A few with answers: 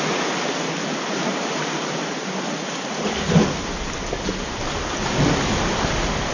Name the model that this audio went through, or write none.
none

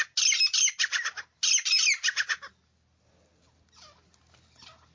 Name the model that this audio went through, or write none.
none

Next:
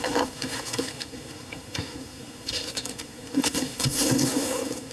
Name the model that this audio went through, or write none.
codec, SNAC